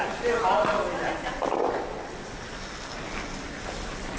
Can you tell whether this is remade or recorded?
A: recorded